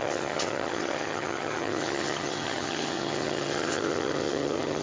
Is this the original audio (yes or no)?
no